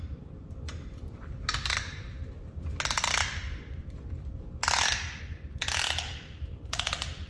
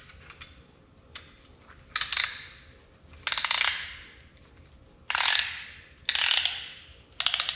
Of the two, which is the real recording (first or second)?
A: second